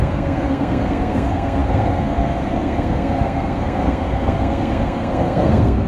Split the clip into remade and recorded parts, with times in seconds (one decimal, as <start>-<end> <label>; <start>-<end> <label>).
0.0-5.9 remade